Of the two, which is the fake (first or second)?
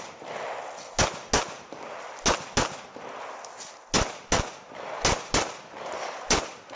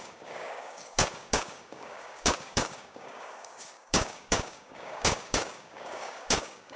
second